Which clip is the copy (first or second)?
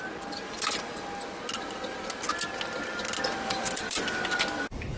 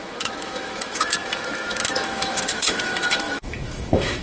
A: second